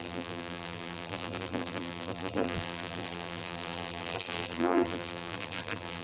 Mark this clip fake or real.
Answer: fake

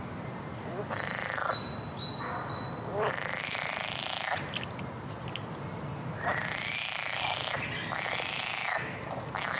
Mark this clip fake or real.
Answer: real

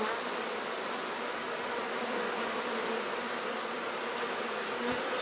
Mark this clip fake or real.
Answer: fake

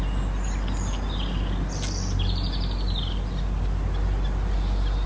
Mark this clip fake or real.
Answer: real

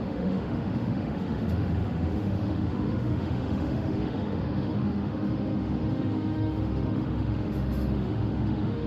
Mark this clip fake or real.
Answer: fake